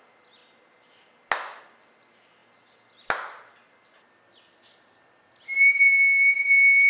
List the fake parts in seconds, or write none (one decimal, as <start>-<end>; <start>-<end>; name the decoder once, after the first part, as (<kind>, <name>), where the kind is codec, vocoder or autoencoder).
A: none